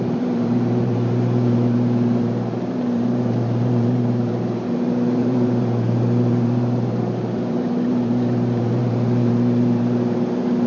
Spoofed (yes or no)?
yes